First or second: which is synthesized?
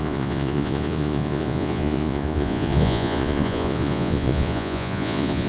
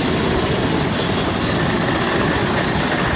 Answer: first